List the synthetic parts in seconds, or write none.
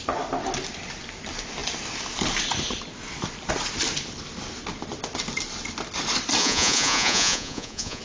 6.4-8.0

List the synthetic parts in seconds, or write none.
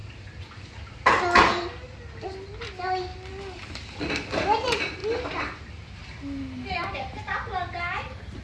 3.1-4.0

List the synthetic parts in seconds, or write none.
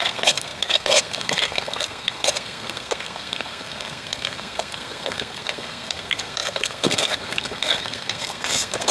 0.0-8.9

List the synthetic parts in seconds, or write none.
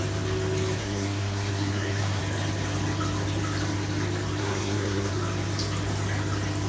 0.8-2.2; 4.4-5.1